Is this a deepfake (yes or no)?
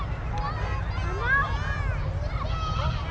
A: no